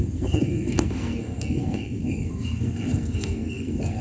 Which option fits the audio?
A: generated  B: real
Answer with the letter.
A